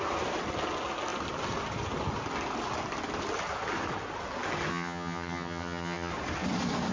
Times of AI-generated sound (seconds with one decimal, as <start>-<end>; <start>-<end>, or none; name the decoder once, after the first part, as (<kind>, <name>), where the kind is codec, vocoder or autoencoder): 4.7-6.1 (vocoder, HiFi-GAN)